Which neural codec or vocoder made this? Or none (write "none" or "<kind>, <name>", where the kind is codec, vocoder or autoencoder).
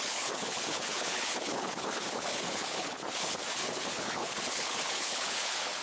codec, HILCodec